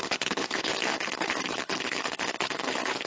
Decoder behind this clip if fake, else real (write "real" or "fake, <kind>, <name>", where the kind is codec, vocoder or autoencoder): fake, codec, HILCodec